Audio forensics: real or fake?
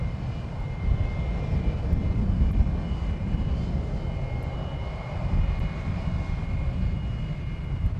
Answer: real